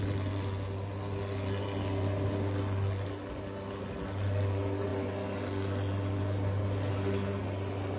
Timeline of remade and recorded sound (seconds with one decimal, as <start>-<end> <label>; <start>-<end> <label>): 0.0-8.0 recorded